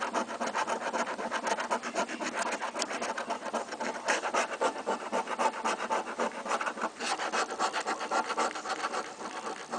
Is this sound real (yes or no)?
yes